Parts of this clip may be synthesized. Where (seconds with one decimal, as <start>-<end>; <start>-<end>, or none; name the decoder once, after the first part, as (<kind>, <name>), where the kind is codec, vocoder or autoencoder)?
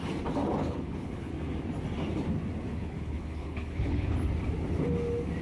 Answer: 0.6-1.3 (codec, HILCodec); 2.7-4.2